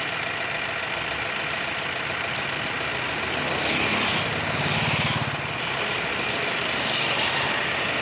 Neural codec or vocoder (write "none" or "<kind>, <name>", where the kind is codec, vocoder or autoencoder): none